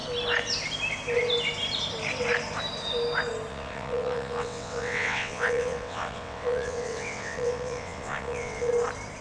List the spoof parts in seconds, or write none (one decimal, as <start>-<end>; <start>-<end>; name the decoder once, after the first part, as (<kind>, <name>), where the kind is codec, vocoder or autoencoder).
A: 3.5-8.7 (vocoder, WaveNeXt)